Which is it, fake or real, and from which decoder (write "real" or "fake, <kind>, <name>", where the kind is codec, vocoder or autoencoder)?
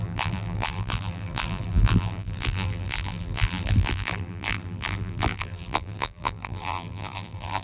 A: fake, vocoder, BigVGAN v2